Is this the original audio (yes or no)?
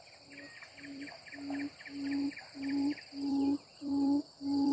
no